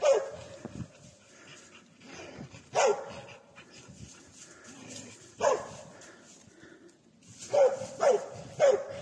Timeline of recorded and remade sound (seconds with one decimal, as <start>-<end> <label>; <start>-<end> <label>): 0.0-9.0 recorded